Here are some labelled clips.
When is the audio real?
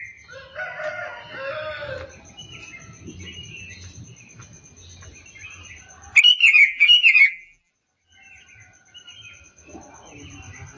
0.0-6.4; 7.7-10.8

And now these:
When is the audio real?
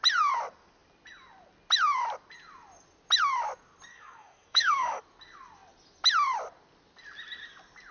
0.0-3.9; 5.0-7.9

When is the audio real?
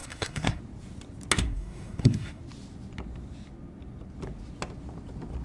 0.6-1.4; 2.4-5.4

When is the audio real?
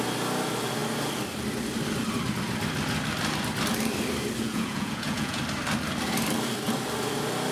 0.0-4.4; 5.4-7.5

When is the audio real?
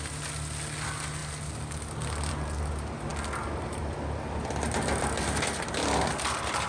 0.0-6.7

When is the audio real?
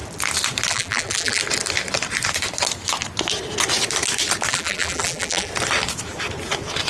0.0-0.7; 1.4-4.5; 5.5-6.9